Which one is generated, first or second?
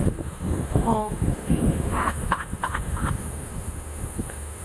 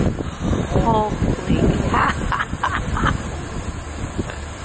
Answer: first